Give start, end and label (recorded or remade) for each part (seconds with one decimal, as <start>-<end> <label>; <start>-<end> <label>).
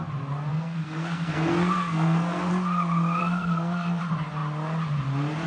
0.0-0.5 recorded; 0.5-2.5 remade; 2.5-3.2 recorded; 3.2-4.0 remade; 4.0-5.5 recorded